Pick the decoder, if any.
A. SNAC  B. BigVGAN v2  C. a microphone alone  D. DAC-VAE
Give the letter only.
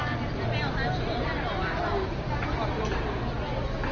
C